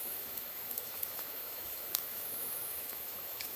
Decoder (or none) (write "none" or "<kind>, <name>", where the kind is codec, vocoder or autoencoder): autoencoder, DAC-VAE